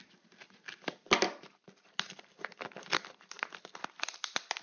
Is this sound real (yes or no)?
yes